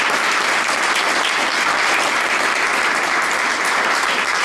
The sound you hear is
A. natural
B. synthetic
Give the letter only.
A